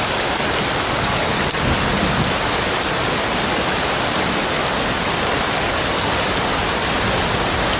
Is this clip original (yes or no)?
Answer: yes